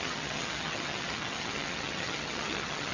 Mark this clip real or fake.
fake